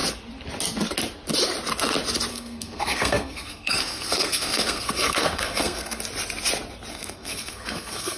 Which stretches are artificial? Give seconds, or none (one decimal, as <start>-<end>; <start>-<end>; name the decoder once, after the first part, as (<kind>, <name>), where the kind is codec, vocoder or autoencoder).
2.3-6.0 (codec, SNAC); 6.9-8.2